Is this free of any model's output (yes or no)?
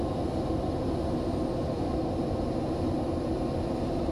yes